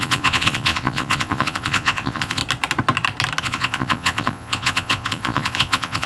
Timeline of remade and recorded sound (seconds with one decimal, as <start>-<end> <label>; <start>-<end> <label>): 0.0-2.4 remade; 2.4-3.4 recorded; 3.4-6.1 remade